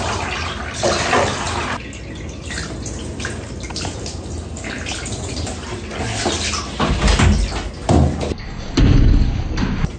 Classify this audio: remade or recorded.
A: recorded